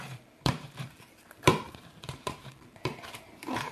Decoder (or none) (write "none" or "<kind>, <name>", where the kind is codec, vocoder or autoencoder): vocoder, BigVGAN v2